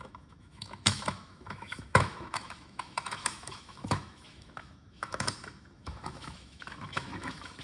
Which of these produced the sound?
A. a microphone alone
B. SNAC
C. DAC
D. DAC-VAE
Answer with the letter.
D